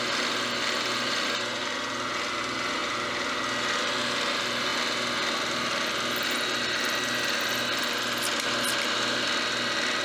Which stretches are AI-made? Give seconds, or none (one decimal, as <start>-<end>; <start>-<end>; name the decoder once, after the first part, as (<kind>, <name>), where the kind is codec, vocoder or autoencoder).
none